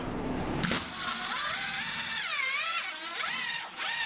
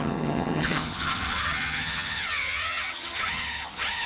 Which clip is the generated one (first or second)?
second